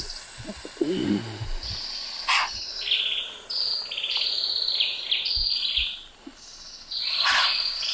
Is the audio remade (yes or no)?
no